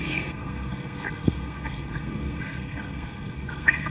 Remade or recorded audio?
remade